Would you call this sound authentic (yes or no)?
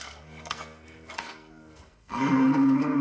no